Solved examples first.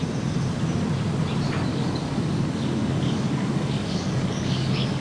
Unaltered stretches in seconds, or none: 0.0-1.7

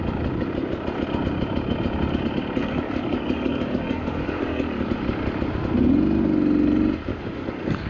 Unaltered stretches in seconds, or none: 0.0-2.6; 4.9-7.1

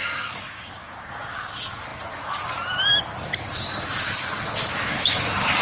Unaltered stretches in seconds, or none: 1.5-4.9

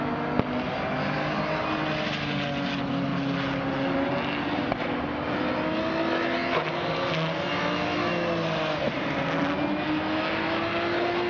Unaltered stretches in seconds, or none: 0.0-11.3

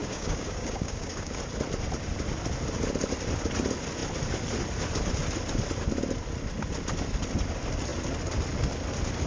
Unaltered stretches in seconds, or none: 1.4-9.3